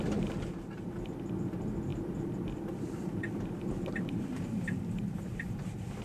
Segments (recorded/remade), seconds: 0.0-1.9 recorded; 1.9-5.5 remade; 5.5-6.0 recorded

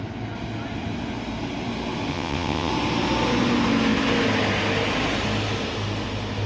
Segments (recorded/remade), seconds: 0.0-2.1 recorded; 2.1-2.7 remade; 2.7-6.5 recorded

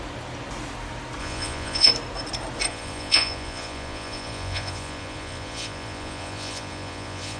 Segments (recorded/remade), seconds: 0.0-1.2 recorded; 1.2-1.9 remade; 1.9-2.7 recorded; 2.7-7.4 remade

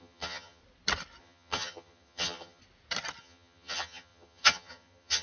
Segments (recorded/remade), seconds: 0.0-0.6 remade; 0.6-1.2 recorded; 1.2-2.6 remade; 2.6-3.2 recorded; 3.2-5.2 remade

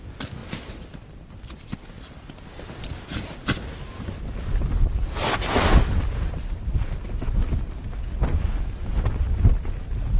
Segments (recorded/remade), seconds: 0.0-10.2 recorded

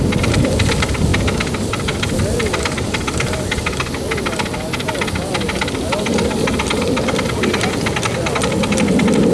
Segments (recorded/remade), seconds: 0.0-9.3 recorded